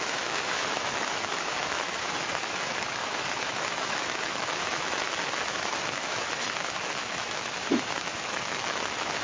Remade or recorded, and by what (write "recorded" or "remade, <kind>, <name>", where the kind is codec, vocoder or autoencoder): remade, autoencoder, DAC-VAE